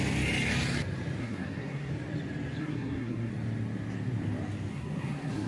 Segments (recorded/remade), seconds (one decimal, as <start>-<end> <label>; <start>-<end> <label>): 0.0-1.2 recorded; 1.2-1.9 remade; 1.9-2.6 recorded; 2.6-3.3 remade; 3.3-4.7 recorded; 4.7-5.5 remade